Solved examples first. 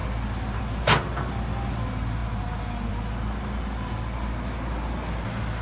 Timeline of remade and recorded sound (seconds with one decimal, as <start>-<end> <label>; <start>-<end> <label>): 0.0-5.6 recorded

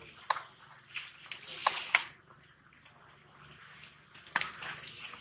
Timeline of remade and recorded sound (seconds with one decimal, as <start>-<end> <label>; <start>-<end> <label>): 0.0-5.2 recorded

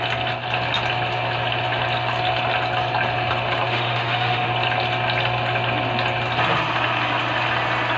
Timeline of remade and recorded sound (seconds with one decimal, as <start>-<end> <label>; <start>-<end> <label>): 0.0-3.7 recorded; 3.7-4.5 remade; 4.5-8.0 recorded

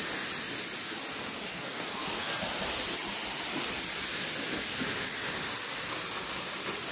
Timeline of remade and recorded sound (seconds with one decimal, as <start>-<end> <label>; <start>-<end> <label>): 0.0-1.5 recorded; 1.5-2.3 remade; 2.3-6.9 recorded